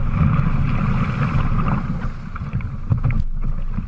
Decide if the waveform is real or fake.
real